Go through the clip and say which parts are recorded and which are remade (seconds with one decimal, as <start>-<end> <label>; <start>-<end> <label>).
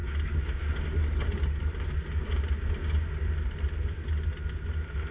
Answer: 0.0-5.1 recorded